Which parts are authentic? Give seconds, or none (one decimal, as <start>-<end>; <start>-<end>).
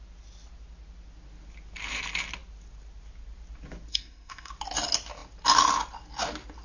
0.0-3.9; 4.5-6.6